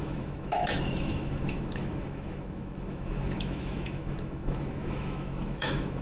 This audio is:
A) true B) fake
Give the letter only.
B